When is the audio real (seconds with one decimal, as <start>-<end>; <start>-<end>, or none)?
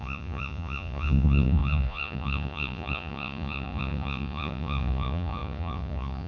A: none